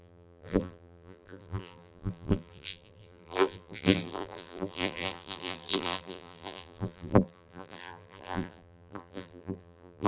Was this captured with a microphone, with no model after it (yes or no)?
no